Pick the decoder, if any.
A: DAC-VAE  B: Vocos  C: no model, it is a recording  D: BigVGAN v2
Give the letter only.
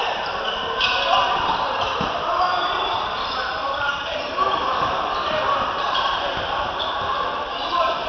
D